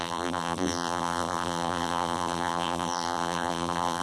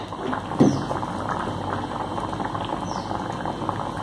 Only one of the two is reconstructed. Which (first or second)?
first